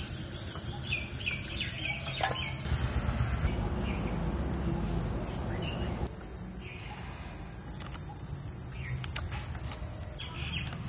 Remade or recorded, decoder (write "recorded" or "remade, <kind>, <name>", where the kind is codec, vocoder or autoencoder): recorded